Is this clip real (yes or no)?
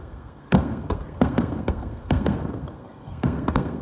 no